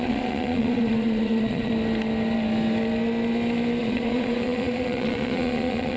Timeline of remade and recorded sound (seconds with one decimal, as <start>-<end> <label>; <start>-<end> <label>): 0.0-1.7 remade; 1.7-3.8 recorded; 3.8-6.0 remade